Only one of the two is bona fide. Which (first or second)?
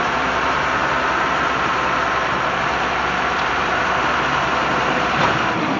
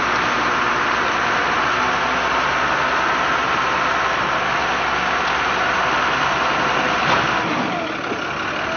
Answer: second